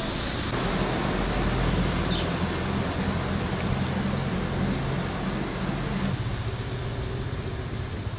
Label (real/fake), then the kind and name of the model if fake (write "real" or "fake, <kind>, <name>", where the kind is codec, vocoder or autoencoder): real